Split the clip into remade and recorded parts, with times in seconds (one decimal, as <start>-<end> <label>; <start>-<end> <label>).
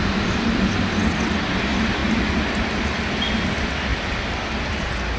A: 0.0-5.2 recorded